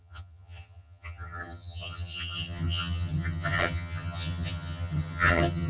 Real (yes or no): no